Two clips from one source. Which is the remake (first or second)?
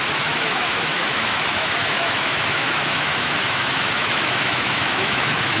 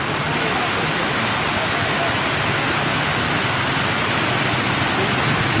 first